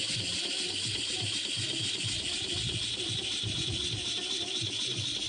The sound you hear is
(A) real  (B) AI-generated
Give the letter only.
A